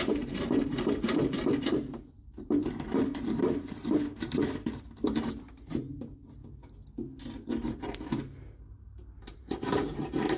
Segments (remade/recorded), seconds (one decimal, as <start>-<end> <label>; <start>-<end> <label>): 0.0-6.4 remade; 6.4-7.5 recorded; 7.5-10.4 remade